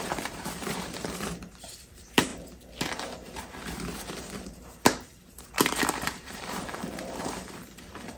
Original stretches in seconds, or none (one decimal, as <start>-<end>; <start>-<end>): 2.3-4.1